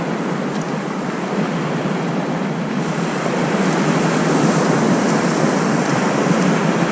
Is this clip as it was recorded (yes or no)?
no